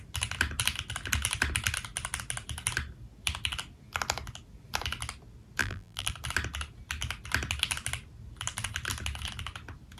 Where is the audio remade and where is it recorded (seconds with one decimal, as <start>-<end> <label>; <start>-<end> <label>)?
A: 0.0-5.6 recorded; 5.6-6.1 remade; 6.1-10.0 recorded

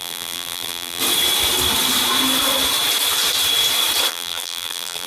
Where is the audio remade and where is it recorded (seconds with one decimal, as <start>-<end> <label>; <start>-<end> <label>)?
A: 0.0-1.0 remade; 1.0-4.1 recorded; 4.1-5.1 remade